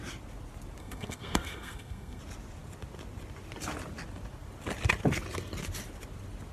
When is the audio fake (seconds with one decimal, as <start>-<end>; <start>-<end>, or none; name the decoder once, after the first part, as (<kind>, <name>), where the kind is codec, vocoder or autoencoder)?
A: 0.8-2.2 (codec, SNAC)